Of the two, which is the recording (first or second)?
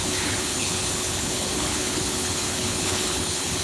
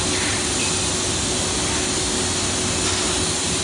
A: second